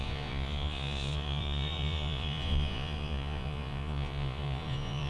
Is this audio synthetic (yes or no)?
yes